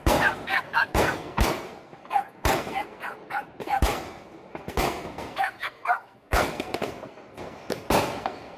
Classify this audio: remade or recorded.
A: remade